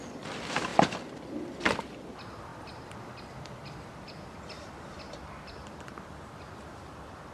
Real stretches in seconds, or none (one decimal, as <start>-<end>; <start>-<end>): 0.7-1.6